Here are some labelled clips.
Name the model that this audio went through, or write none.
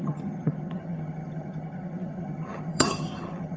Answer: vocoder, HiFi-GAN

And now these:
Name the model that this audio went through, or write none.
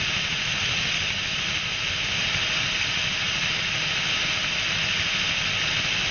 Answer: none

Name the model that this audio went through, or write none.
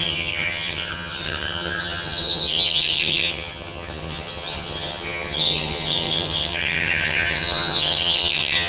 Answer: vocoder, HiFi-GAN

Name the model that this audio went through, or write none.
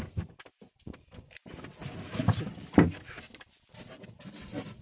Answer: none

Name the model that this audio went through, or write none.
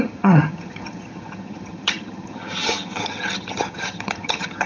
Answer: vocoder, HiFi-GAN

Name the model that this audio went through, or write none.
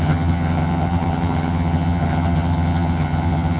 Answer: vocoder, HiFi-GAN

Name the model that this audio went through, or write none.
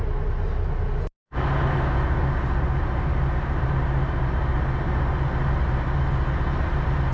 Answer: none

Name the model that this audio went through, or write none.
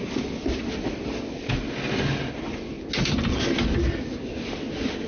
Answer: none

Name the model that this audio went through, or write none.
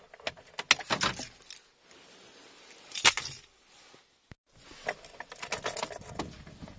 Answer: none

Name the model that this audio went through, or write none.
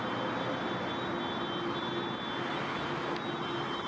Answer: none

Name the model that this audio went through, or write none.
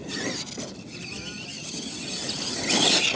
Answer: none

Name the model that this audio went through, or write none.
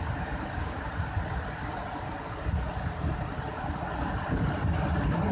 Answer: none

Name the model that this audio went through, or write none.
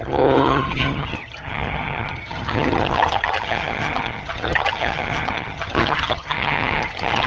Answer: vocoder, HiFi-GAN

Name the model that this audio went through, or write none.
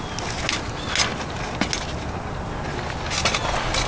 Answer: none